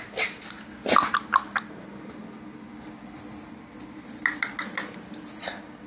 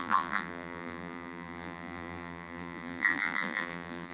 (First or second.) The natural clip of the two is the first